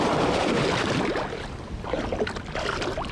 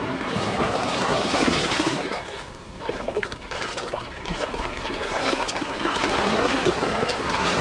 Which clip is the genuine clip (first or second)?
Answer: first